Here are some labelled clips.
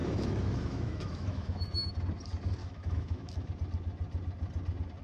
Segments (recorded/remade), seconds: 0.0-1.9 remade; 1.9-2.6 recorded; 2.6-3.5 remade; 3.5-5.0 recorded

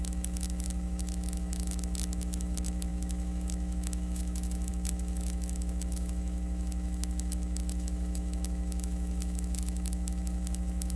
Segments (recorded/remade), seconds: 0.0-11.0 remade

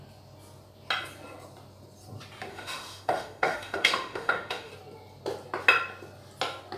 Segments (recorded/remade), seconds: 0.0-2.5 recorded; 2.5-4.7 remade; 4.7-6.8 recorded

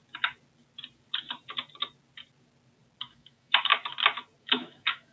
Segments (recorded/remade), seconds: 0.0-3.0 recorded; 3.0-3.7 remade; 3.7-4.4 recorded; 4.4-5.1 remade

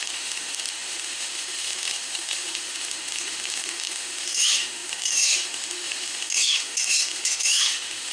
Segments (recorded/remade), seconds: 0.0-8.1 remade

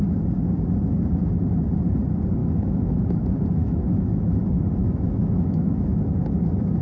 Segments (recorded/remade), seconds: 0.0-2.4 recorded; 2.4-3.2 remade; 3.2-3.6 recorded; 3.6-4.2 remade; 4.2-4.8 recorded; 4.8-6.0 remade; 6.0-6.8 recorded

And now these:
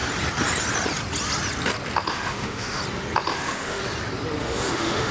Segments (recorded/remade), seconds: 0.0-2.1 recorded; 2.1-2.8 remade; 2.8-3.3 recorded; 3.3-3.8 remade; 3.8-4.4 recorded; 4.4-5.1 remade